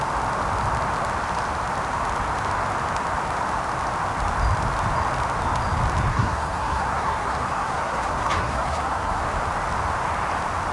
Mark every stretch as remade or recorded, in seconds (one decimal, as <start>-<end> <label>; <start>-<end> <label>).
0.0-6.1 recorded; 6.1-9.2 remade; 9.2-10.7 recorded